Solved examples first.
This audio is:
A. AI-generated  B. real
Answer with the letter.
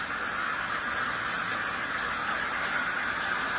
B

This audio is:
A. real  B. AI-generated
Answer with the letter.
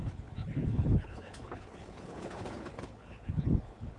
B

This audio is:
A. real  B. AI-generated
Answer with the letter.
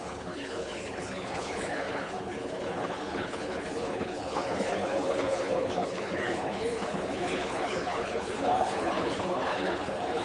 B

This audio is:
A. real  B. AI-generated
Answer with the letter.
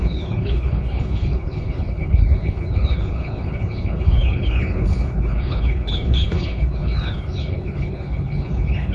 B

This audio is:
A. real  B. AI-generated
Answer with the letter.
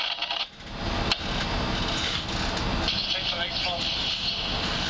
A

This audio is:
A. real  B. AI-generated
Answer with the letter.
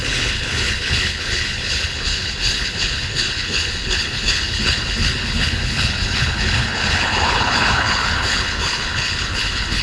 B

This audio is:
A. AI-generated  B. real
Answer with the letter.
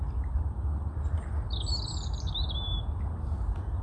B